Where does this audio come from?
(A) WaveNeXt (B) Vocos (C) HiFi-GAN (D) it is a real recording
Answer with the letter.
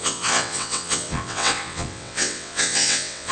A